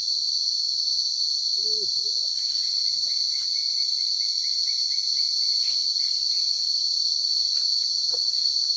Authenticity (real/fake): real